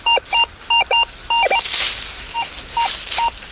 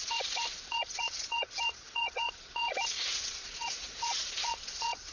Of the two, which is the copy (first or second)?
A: second